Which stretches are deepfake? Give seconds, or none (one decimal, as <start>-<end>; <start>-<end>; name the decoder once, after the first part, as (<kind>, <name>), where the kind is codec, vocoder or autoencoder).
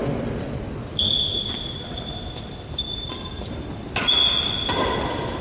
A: 0.0-3.2 (vocoder, BigVGAN v2)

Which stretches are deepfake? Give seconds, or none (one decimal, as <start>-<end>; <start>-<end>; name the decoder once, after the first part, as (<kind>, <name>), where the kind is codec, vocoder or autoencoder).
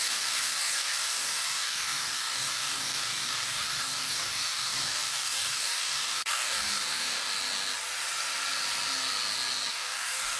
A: 0.0-7.3 (codec, DAC); 9.7-10.4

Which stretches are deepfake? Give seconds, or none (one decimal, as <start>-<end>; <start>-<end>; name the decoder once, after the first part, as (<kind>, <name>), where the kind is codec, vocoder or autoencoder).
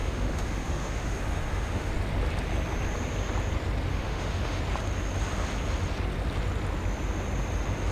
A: 0.0-1.9 (autoencoder, DAC-VAE); 3.9-4.6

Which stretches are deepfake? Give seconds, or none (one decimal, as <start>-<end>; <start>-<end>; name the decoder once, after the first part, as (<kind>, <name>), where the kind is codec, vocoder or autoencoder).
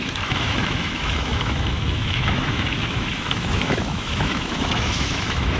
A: 0.0-5.6 (autoencoder, DAC-VAE)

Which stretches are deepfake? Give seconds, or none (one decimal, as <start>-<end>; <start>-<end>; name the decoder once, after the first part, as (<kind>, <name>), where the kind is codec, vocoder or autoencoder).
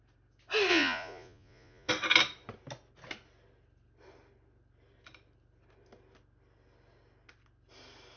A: 0.7-1.9 (vocoder, Vocos)